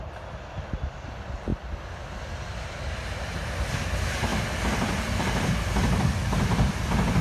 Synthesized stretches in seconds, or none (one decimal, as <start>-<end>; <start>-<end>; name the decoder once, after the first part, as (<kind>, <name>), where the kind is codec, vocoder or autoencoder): none